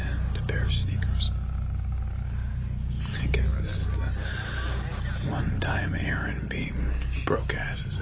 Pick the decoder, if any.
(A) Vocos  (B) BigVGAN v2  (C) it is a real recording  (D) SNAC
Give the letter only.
C